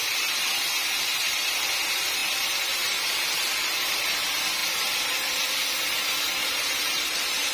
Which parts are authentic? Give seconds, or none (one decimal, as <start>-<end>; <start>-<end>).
0.0-2.2; 3.9-6.4